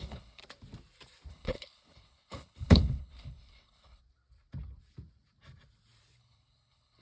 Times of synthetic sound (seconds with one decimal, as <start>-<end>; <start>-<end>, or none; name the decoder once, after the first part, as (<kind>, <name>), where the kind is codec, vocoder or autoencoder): 0.0-0.4 (codec, HILCodec); 1.3-4.0; 6.2-7.0